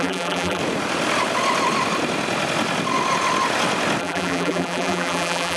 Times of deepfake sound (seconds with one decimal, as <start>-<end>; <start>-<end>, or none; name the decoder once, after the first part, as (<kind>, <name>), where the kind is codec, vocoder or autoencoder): 0.0-0.6 (vocoder, BigVGAN v2); 4.0-5.6